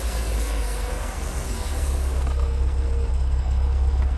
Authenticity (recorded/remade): remade